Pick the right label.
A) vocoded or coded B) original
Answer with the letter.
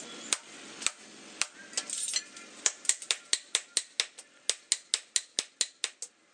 B